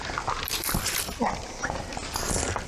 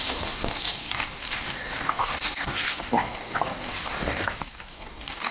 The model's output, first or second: second